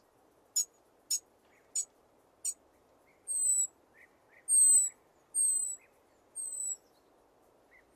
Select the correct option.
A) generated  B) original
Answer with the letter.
B